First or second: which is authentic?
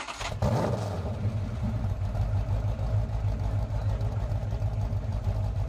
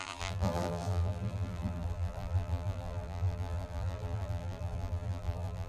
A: first